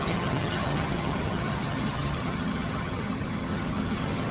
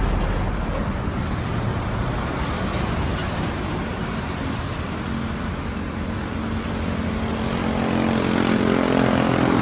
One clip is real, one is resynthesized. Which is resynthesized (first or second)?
first